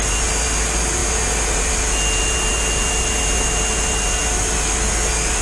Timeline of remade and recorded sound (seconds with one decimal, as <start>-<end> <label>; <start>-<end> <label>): 0.0-5.4 recorded